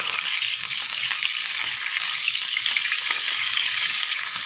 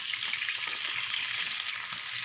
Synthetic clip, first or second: first